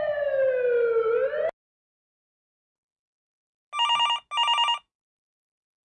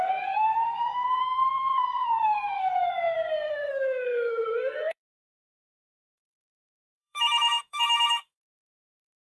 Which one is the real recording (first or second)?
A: first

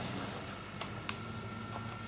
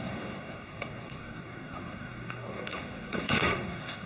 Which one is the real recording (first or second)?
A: first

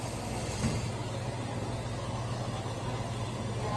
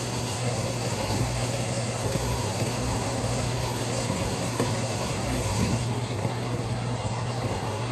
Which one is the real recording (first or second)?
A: first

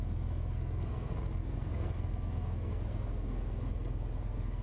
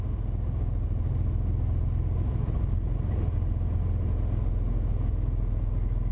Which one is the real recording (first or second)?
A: second